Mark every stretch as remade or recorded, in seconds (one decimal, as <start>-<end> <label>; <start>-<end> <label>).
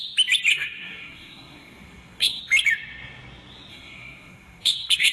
0.0-0.5 recorded; 0.5-2.4 remade; 2.4-3.7 recorded; 3.7-5.1 remade